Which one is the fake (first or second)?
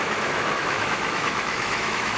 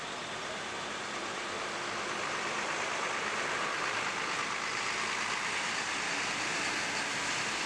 first